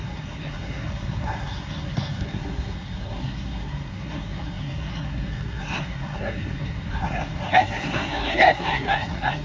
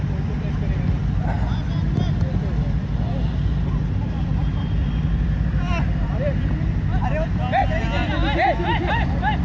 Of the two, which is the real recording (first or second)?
second